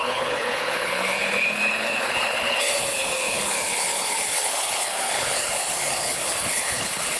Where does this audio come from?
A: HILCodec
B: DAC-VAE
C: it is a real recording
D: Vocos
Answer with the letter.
A